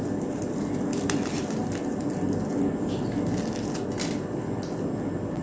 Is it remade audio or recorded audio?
recorded